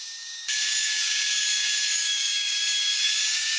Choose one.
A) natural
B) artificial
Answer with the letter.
B